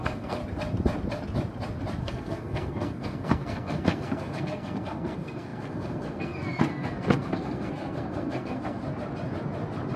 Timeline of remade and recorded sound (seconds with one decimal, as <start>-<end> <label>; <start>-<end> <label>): 0.0-0.4 remade; 0.4-2.0 recorded; 2.0-8.8 remade; 8.8-10.0 recorded

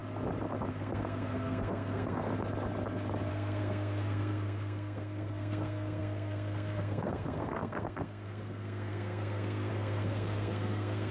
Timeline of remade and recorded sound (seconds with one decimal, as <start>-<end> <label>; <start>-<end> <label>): 0.0-0.7 recorded; 0.7-2.3 remade; 2.3-3.3 recorded; 3.3-11.1 remade

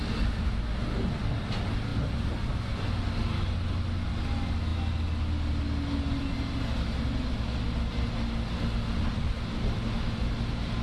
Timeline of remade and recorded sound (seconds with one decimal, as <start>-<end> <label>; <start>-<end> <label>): 0.0-10.8 recorded

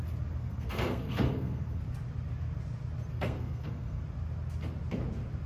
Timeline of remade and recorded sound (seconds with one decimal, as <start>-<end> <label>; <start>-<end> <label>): 0.0-0.4 recorded; 0.4-1.8 remade; 1.8-3.1 recorded; 3.1-4.0 remade; 4.0-5.5 recorded

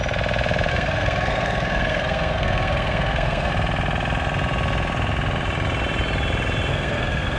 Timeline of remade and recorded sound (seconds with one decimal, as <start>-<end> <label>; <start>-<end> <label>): 0.0-0.7 recorded; 0.7-3.5 remade; 3.5-6.7 recorded; 6.7-7.4 remade

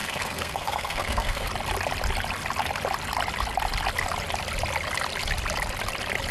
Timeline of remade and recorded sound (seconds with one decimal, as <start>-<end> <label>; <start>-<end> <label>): 0.0-1.5 remade; 1.5-6.3 recorded